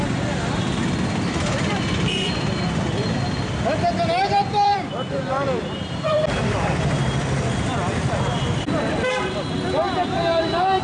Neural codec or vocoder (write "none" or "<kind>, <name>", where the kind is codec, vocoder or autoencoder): vocoder, BigVGAN v2